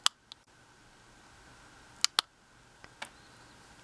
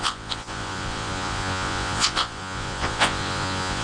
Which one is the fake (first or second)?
second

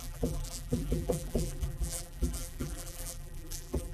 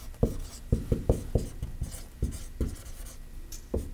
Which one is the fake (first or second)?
first